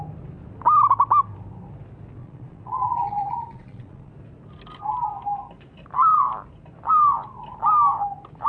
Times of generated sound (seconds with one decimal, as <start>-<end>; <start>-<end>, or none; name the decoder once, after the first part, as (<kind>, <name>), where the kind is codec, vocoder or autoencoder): 2.2-4.1 (vocoder, Vocos)